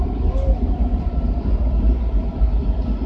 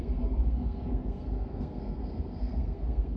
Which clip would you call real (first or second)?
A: first